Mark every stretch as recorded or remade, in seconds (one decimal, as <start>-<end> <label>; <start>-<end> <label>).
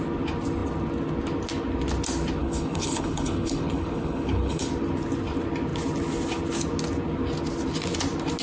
0.0-2.4 recorded; 2.4-4.7 remade; 4.7-8.4 recorded